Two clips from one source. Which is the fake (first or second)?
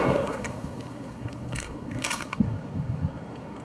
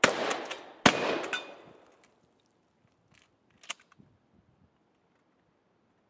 first